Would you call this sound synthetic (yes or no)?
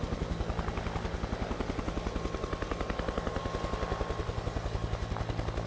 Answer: no